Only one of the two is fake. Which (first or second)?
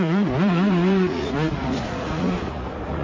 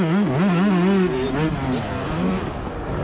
first